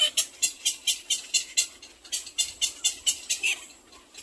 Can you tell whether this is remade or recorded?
recorded